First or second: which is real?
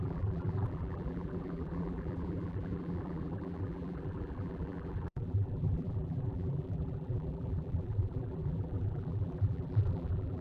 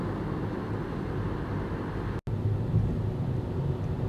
second